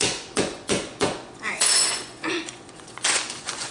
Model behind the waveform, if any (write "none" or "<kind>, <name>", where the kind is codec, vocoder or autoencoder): vocoder, Vocos